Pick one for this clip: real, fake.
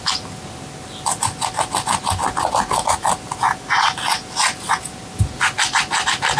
real